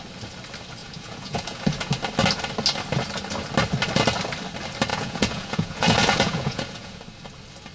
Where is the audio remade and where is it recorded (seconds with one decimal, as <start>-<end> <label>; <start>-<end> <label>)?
0.0-0.8 recorded; 0.8-1.9 remade; 1.9-4.9 recorded; 4.9-7.0 remade; 7.0-7.7 recorded